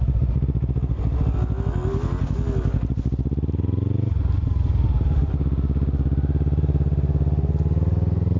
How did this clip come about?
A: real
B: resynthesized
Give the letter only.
A